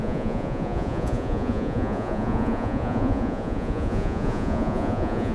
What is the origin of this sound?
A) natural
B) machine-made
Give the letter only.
B